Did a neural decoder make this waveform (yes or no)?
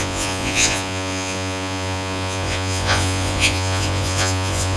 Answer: yes